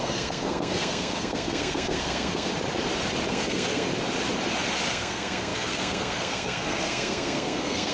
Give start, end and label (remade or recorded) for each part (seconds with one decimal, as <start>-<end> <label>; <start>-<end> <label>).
0.0-2.5 remade; 2.5-3.3 recorded; 3.3-3.9 remade; 3.9-4.9 recorded; 4.9-7.9 remade